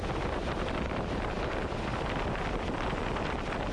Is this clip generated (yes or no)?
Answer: no